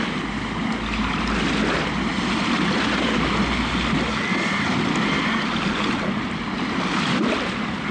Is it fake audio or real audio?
real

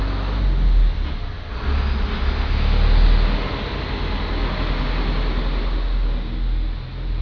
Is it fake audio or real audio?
real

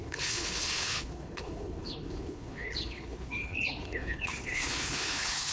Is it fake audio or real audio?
fake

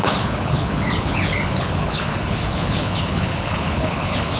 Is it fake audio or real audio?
fake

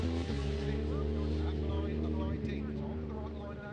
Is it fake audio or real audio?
real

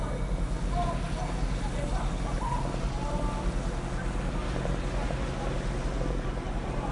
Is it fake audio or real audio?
real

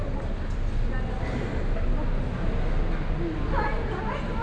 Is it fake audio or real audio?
real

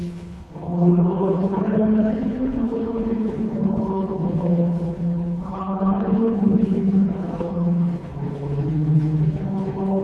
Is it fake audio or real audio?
fake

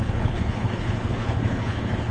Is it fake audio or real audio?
fake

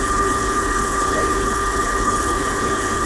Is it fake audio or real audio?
fake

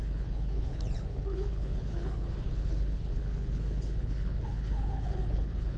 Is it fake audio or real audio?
fake